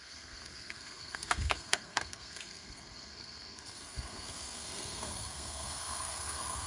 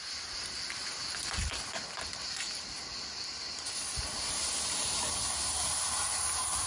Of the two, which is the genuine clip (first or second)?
second